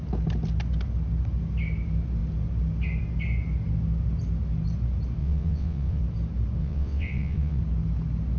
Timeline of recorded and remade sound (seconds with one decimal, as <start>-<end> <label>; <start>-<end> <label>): 0.0-5.2 recorded; 5.2-6.0 remade; 6.0-6.6 recorded; 6.6-7.6 remade; 7.6-8.4 recorded